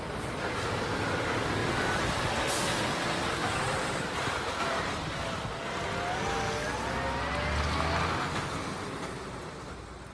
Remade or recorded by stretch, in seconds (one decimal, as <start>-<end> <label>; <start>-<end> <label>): 0.0-1.6 recorded; 1.6-2.2 remade; 2.2-3.4 recorded; 3.4-4.8 remade; 4.8-10.1 recorded